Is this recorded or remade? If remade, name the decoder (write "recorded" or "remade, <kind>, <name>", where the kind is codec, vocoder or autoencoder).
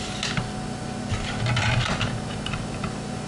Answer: recorded